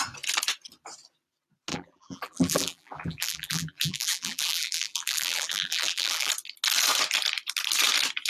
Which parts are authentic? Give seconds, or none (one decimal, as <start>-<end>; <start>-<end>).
0.0-1.7; 6.3-8.3